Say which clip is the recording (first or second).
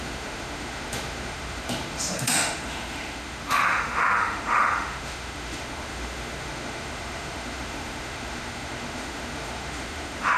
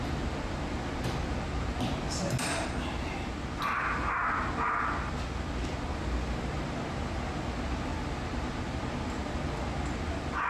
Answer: second